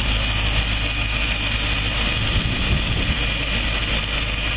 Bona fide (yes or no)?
yes